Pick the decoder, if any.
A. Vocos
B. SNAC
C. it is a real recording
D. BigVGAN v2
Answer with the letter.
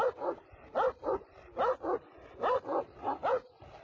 C